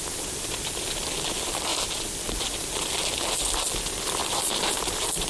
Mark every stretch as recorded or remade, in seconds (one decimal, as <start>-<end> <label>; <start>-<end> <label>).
0.0-5.3 recorded